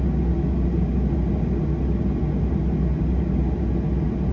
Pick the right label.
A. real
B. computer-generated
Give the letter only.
A